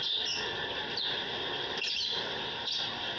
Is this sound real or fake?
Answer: real